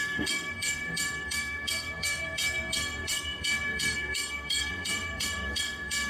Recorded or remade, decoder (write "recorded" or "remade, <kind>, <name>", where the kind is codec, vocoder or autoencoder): remade, codec, SNAC